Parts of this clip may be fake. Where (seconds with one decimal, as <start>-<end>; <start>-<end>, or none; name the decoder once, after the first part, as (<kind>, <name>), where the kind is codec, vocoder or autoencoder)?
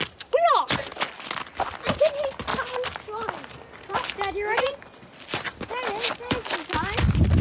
none